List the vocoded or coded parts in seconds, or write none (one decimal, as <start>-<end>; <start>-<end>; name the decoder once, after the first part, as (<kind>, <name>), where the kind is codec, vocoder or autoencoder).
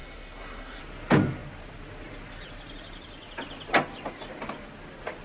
0.0-0.8 (codec, SNAC)